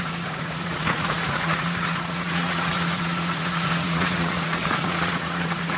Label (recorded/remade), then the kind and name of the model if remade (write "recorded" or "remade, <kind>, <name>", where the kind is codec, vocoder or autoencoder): remade, vocoder, Vocos